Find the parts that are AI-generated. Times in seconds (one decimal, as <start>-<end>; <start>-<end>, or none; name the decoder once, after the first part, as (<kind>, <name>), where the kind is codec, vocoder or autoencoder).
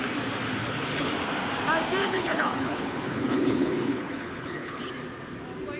0.6-1.1 (codec, HILCodec); 2.0-4.9